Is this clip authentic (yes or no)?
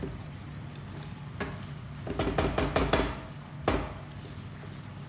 yes